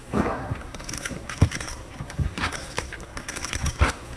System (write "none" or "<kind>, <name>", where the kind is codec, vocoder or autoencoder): codec, SNAC